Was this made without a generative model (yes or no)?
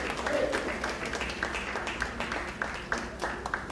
yes